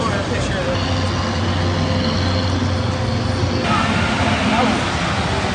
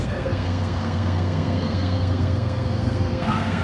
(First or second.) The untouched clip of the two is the first